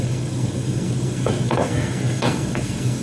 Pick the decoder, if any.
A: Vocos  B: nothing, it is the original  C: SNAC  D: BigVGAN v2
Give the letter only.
C